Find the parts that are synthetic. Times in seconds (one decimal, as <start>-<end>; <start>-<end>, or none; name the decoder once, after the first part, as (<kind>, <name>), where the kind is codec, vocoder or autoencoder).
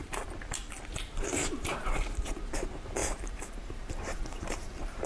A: 0.0-0.6 (vocoder, BigVGAN v2); 1.2-5.1